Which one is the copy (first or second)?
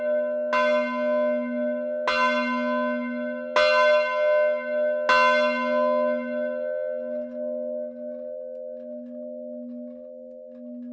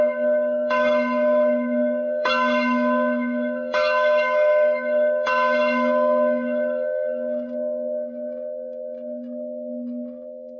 second